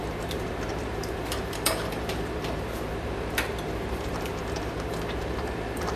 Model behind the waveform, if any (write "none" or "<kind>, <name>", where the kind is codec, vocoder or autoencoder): vocoder, BigVGAN v2